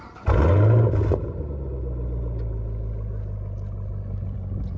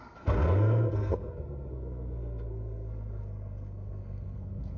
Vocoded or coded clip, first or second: second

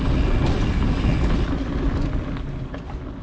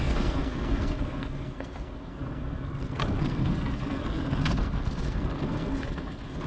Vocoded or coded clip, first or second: second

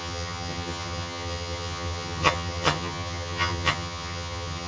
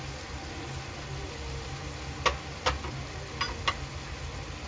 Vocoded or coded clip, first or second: first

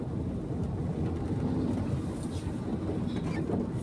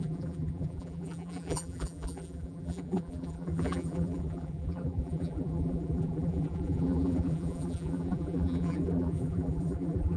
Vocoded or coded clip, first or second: second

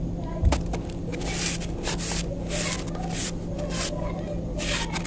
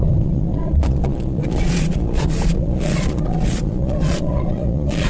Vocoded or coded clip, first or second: second